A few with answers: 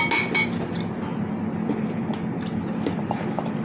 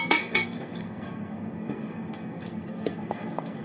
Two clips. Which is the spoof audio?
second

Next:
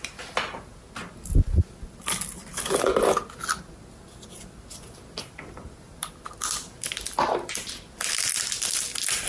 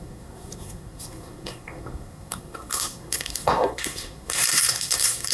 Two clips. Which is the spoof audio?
second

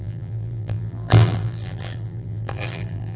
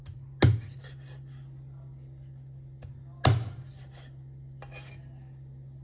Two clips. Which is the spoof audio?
first